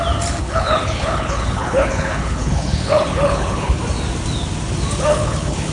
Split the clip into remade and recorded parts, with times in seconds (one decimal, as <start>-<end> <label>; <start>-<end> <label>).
0.0-0.4 recorded; 0.4-3.8 remade; 3.8-5.1 recorded; 5.1-5.7 remade